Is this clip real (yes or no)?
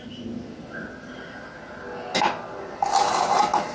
yes